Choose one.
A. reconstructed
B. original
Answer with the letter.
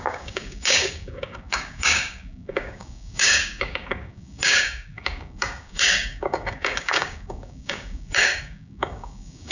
A